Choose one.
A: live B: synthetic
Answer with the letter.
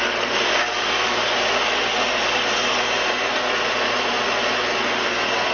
A